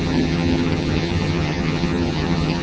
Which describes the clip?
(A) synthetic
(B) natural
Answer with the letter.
A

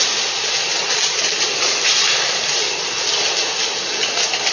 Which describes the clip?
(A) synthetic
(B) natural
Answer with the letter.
B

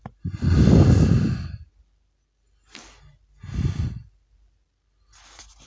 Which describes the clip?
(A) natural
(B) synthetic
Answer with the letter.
A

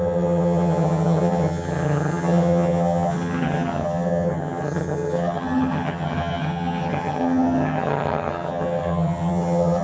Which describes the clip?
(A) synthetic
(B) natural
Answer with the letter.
A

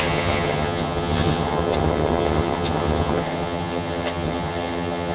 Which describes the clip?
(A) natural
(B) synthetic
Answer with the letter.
B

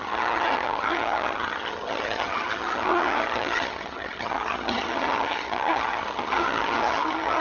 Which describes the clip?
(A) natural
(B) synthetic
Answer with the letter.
B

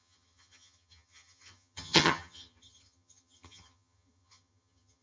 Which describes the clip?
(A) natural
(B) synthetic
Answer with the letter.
B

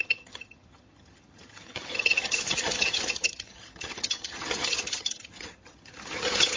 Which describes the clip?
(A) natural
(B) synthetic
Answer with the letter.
B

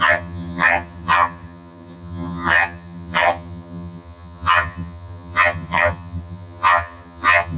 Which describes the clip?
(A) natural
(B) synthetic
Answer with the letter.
B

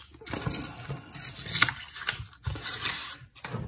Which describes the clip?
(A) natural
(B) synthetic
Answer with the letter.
A